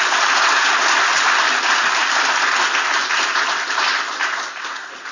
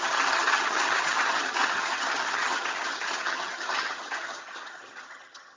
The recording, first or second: first